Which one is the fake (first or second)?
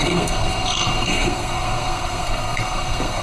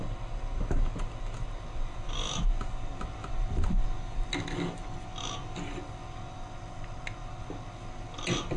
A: first